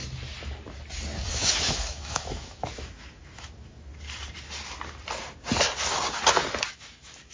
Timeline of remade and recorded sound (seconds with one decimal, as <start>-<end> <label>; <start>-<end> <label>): 0.0-1.3 recorded; 1.3-3.9 remade; 3.9-6.7 recorded; 6.7-7.3 remade

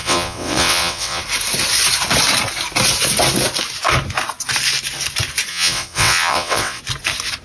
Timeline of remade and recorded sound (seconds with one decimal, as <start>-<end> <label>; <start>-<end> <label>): 0.0-1.2 remade; 1.2-5.5 recorded; 5.5-6.8 remade; 6.8-7.4 recorded

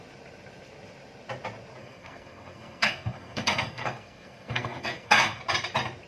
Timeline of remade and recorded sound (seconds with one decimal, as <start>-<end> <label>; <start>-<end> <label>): 0.0-1.8 recorded; 1.8-5.4 remade; 5.4-6.1 recorded